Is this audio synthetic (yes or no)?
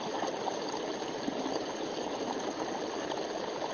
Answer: no